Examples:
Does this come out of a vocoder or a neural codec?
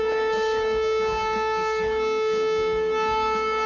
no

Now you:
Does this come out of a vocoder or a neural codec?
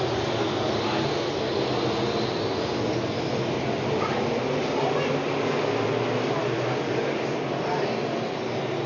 no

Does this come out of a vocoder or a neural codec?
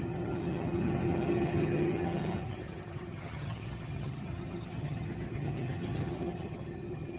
yes